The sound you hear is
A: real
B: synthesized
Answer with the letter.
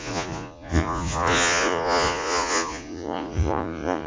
B